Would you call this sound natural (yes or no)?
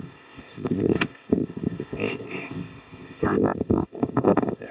no